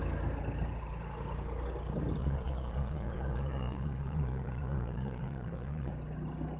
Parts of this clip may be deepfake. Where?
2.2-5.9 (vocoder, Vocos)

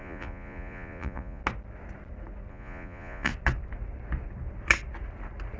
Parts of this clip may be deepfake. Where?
0.0-1.4 (vocoder, Vocos); 2.5-3.3

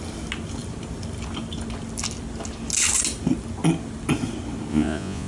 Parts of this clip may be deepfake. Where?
4.7-5.3 (vocoder, Vocos)

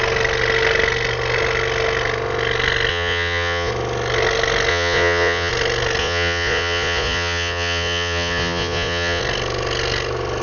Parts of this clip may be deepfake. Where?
2.9-3.7 (vocoder, Vocos); 4.7-5.5; 6.0-9.2